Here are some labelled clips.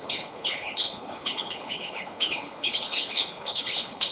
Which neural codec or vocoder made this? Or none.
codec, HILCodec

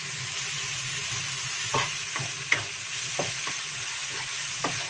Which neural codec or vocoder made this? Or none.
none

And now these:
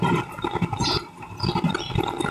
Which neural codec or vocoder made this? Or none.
none